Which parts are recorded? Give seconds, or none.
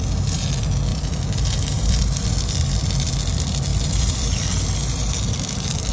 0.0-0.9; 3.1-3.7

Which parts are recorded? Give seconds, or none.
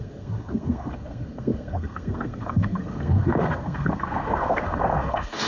none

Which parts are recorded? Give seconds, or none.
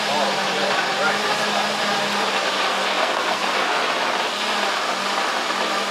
0.0-2.7; 3.8-5.9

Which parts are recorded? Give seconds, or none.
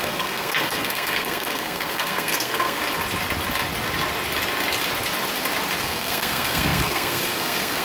2.8-5.8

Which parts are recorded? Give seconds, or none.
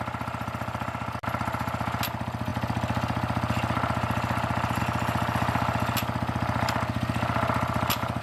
0.0-8.2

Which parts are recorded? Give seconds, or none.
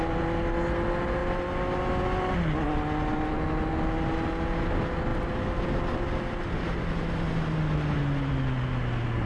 0.0-9.3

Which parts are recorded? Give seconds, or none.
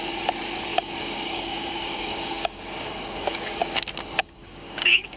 0.0-0.7; 3.8-4.2